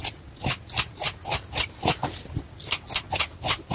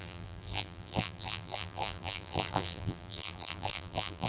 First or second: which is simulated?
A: second